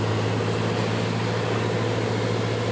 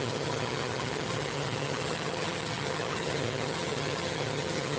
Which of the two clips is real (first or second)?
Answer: first